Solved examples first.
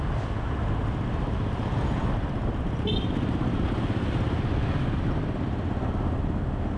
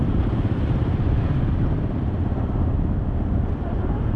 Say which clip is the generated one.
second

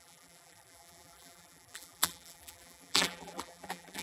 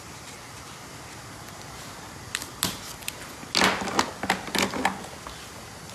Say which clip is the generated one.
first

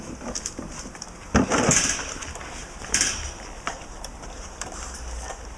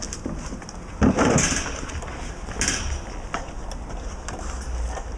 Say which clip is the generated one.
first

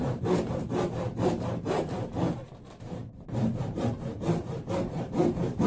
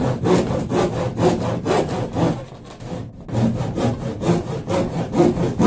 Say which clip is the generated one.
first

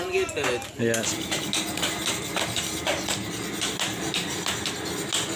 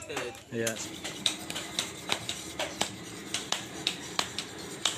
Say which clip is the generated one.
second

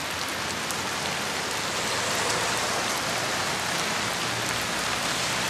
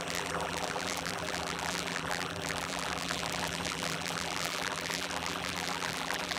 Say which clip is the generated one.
second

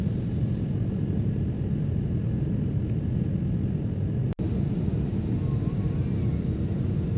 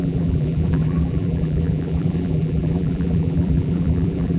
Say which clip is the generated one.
second